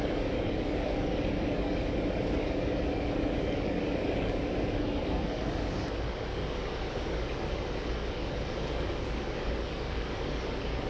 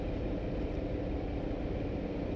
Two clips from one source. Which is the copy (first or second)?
first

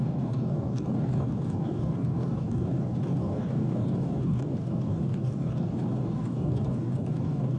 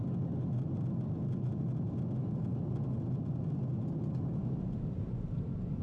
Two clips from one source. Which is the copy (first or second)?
first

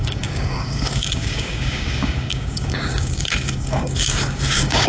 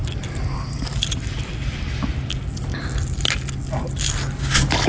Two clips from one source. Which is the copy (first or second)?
first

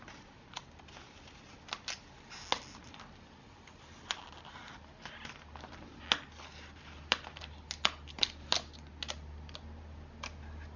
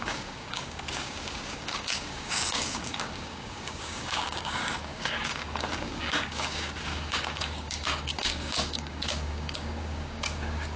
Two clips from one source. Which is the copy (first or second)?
second